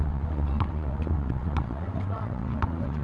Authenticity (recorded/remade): remade